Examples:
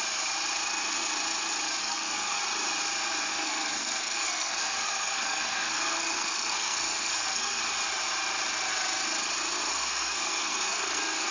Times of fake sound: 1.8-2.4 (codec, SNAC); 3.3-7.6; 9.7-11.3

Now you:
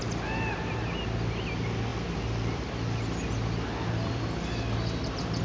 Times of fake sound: 1.9-5.4 (vocoder, BigVGAN v2)

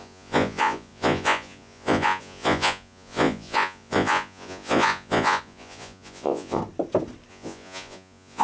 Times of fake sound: 0.0-6.6 (vocoder, Vocos); 7.3-8.4

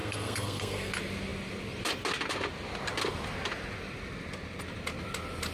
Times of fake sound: 0.0-0.9 (codec, SNAC)

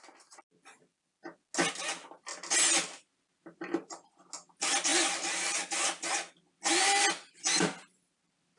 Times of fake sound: none

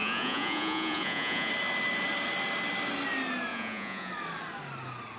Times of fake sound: 0.0-1.5 (vocoder, Vocos); 3.5-4.1

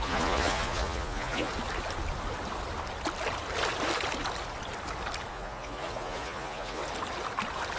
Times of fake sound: 0.0-1.5 (vocoder, Vocos); 5.3-6.8